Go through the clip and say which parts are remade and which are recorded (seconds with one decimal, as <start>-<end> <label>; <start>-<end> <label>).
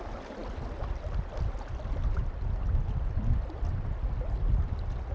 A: 0.0-5.1 recorded